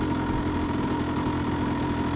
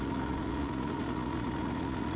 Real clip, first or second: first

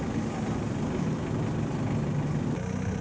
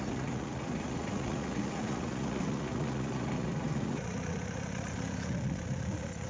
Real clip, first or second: first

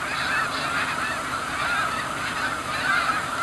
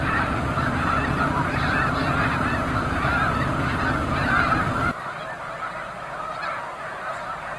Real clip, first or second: first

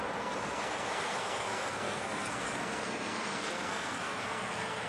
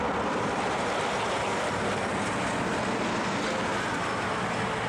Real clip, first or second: second